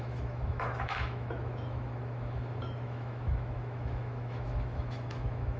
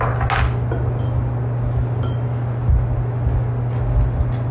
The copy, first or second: first